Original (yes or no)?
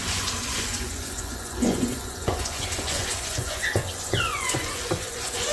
no